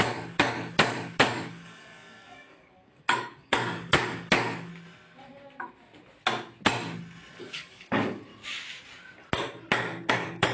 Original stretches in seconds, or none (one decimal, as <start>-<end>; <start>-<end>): 4.7-7.4; 8.3-10.1